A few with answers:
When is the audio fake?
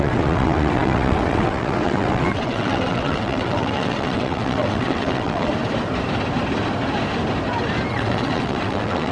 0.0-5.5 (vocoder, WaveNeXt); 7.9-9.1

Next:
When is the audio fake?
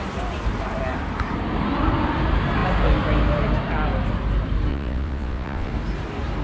4.7-5.7 (vocoder, WaveNeXt)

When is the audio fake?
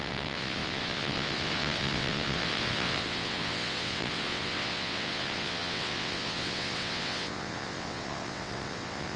0.0-9.2 (vocoder, WaveNeXt)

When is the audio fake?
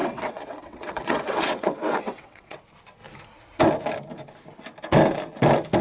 0.0-2.6 (vocoder, WaveNeXt)